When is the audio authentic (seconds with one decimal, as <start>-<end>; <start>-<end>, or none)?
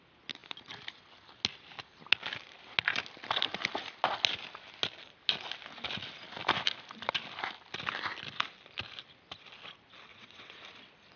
0.0-10.1; 10.6-11.2